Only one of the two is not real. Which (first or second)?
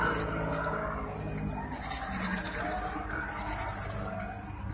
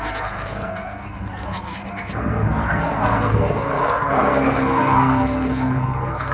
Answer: second